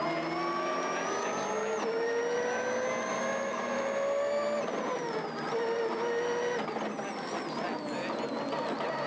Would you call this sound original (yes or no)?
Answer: yes